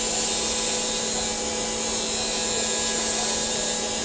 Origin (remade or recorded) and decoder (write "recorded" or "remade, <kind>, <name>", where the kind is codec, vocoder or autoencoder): recorded